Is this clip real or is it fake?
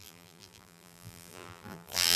fake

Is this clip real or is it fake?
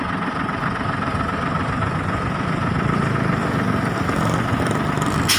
real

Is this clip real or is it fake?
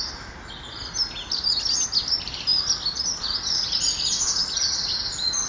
real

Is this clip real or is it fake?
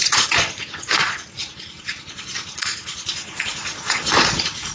fake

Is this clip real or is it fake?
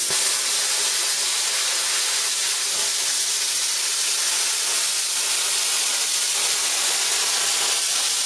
real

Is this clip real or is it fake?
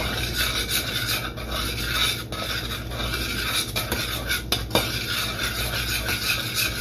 real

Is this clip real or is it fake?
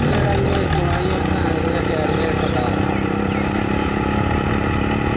real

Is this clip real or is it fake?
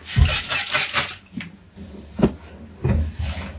real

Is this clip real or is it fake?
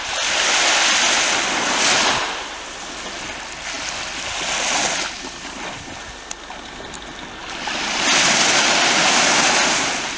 real